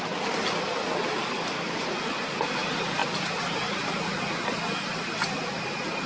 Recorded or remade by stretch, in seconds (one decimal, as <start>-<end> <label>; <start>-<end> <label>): 0.0-1.2 recorded; 1.2-1.8 remade; 1.8-6.1 recorded

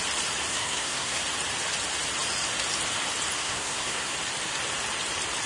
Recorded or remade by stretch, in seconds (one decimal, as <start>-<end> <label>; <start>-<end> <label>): 0.0-0.5 recorded; 0.5-1.2 remade; 1.2-3.4 recorded; 3.4-4.1 remade; 4.1-5.5 recorded